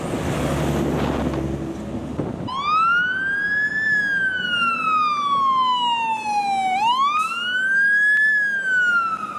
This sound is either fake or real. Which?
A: real